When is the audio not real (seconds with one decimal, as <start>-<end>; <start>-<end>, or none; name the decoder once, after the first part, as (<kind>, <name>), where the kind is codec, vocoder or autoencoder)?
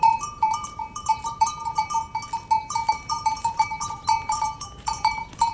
0.0-2.1 (vocoder, BigVGAN v2); 2.6-5.5